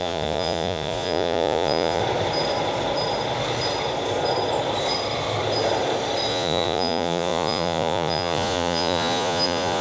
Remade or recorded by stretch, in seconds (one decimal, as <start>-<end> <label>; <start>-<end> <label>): 0.0-2.0 remade; 2.0-6.3 recorded; 6.3-9.8 remade

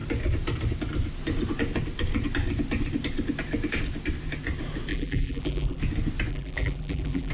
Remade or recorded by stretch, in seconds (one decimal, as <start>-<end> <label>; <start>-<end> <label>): 0.0-4.9 recorded; 4.9-5.8 remade; 5.8-6.3 recorded; 6.3-7.3 remade

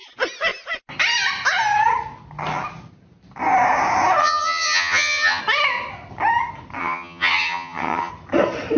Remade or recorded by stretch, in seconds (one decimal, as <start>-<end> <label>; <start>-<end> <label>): 0.0-4.2 recorded; 4.2-5.4 remade; 5.4-6.8 recorded; 6.8-8.1 remade; 8.1-8.8 recorded